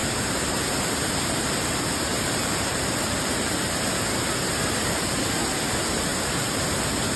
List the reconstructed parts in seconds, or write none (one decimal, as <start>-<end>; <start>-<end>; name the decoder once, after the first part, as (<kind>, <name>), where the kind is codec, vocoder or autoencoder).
0.0-4.2 (vocoder, BigVGAN v2); 6.1-6.6